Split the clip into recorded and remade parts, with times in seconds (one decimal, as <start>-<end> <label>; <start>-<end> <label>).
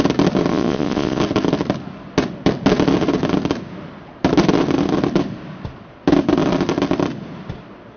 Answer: 0.0-0.5 recorded; 0.5-1.2 remade; 1.2-8.0 recorded